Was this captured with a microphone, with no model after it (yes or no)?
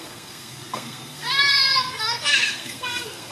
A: no